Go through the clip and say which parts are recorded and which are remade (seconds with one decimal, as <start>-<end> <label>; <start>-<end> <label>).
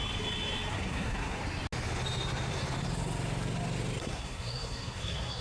0.0-0.7 recorded; 0.7-1.4 remade; 1.4-4.0 recorded; 4.0-5.4 remade